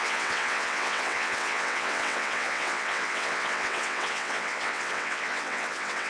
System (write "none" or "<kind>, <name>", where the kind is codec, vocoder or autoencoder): vocoder, WaveNeXt